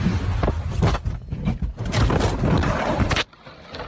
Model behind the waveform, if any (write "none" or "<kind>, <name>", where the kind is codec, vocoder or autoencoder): none